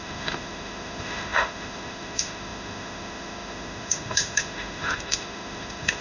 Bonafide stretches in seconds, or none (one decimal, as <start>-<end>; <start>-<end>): none